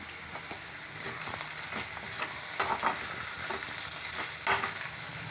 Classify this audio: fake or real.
real